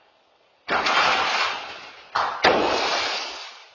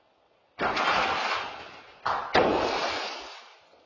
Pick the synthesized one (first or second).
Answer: first